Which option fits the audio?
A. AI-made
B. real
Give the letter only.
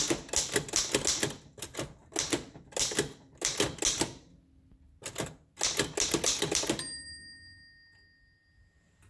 B